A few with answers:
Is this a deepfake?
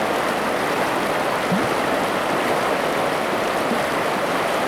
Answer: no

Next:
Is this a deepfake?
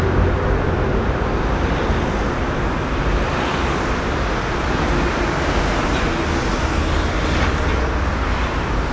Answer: no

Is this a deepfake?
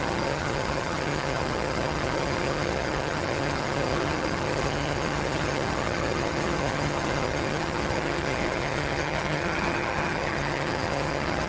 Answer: yes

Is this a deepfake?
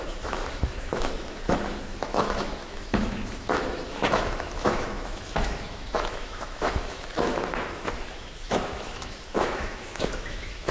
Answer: yes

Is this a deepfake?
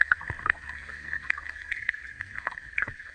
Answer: yes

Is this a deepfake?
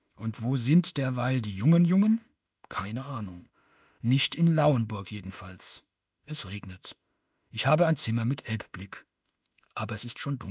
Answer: yes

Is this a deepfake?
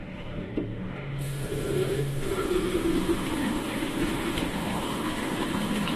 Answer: yes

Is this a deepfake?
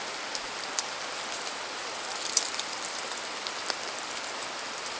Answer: yes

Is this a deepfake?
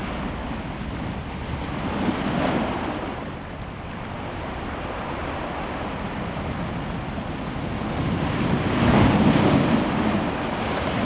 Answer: no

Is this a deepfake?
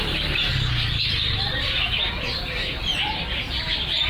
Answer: no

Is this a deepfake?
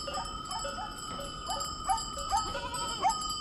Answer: no